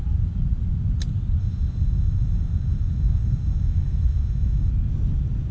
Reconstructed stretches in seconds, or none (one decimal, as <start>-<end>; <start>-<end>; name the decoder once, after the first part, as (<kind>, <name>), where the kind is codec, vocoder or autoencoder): 1.4-4.7 (autoencoder, DAC-VAE)